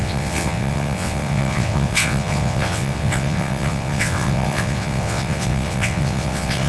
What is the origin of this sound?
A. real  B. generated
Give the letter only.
B